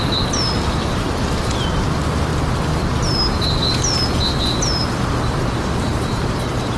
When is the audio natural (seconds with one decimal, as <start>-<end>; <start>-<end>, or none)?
0.0-6.8

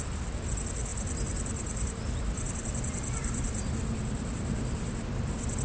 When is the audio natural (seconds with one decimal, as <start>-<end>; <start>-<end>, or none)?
0.0-0.9; 1.9-3.2

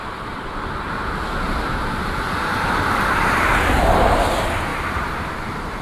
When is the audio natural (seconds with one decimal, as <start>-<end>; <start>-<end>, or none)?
0.5-2.5; 3.2-4.7

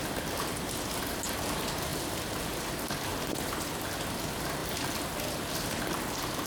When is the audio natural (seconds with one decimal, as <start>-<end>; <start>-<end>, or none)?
0.0-1.9; 2.6-3.1; 3.7-4.6; 5.3-6.5

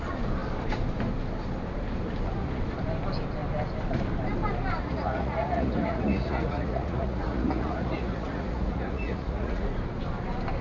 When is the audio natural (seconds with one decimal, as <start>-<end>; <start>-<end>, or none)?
0.0-4.8; 9.7-10.6

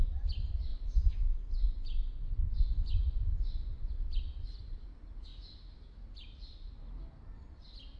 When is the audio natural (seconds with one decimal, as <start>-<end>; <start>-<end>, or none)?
0.0-0.7; 3.9-8.0

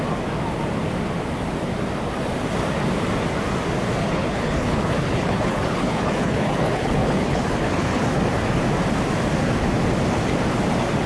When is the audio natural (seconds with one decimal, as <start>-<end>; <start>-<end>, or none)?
0.0-4.0; 8.2-11.1

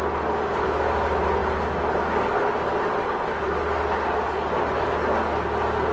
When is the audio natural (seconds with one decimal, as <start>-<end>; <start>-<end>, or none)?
0.0-5.9